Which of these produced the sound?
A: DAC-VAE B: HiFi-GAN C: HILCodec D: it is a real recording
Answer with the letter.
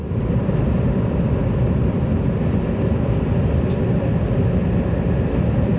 D